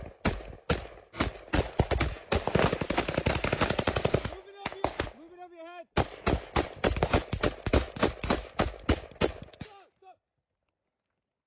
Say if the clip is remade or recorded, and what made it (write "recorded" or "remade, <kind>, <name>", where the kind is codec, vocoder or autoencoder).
recorded